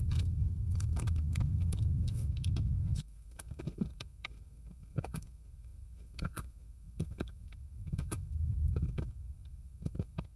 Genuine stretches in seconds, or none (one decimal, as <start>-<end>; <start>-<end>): none